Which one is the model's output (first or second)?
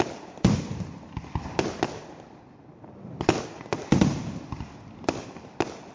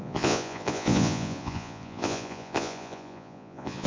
second